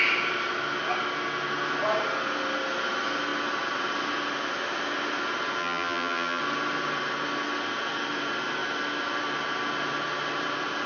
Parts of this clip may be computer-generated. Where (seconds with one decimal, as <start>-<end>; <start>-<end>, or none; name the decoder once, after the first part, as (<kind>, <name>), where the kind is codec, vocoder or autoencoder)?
5.6-6.4 (vocoder, BigVGAN v2)

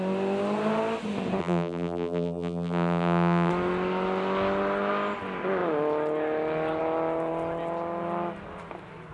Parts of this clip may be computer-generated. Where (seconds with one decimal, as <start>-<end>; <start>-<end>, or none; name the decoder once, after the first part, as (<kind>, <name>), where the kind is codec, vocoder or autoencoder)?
1.4-3.5 (vocoder, BigVGAN v2)